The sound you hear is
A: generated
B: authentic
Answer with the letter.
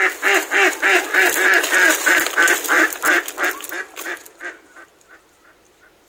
B